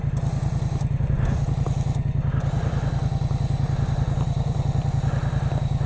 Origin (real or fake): real